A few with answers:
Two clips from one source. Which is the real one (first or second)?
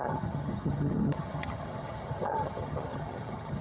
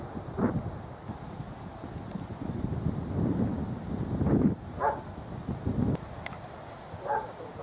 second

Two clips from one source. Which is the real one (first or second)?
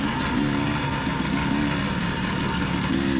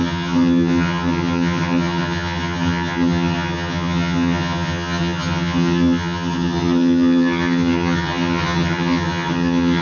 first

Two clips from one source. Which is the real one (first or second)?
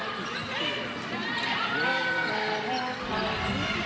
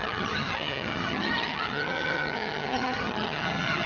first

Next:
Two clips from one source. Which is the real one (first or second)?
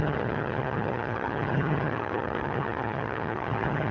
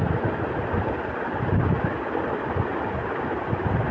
second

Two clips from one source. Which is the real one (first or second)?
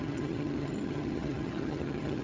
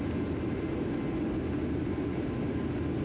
second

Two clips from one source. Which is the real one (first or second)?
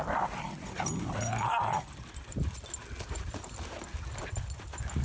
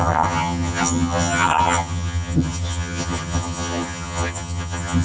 first